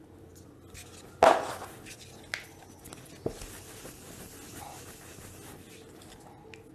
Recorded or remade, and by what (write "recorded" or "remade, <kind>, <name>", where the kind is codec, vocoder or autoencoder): recorded